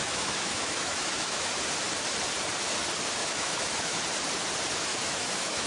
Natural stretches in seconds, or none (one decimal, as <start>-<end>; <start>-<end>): 1.5-3.2; 4.0-4.9